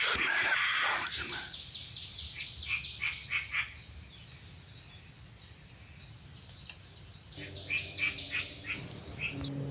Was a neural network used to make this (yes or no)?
no